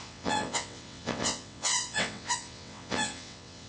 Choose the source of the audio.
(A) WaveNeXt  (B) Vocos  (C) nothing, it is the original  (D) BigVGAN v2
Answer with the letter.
A